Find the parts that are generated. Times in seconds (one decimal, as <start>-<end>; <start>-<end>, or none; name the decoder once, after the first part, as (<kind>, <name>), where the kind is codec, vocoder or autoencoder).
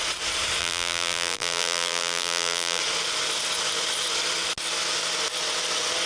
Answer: 0.6-2.8 (vocoder, BigVGAN v2)